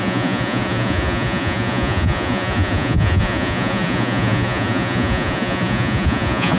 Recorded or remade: remade